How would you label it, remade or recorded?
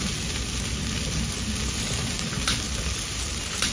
recorded